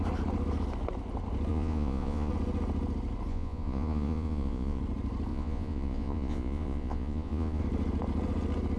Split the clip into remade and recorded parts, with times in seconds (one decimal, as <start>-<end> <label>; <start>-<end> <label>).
0.0-1.5 recorded; 1.5-2.3 remade; 2.3-3.3 recorded; 3.3-4.8 remade; 4.8-5.3 recorded; 5.3-7.6 remade; 7.6-8.8 recorded